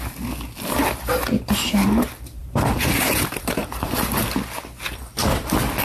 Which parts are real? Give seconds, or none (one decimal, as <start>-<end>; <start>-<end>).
0.0-2.4; 4.1-5.8